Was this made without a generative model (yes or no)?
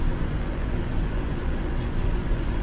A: no